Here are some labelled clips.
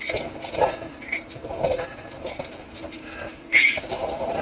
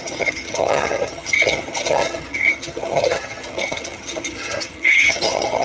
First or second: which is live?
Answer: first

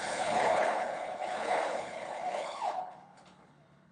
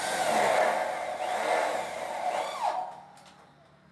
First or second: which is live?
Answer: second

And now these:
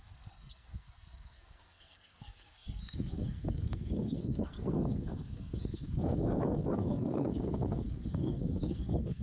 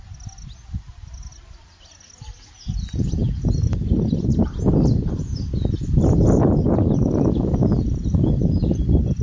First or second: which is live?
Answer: second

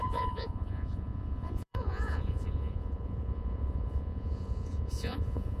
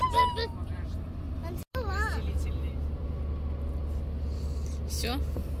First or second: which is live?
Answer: second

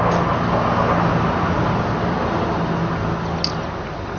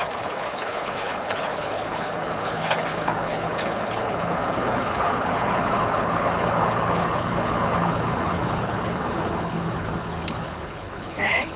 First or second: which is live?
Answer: first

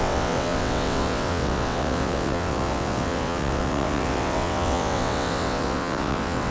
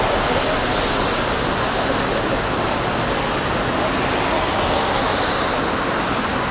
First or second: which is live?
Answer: second